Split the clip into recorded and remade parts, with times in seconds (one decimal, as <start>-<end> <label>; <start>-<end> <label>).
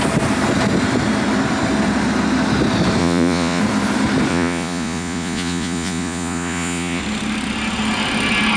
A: 0.0-3.0 recorded; 3.0-3.6 remade; 3.6-4.3 recorded; 4.3-7.0 remade; 7.0-8.6 recorded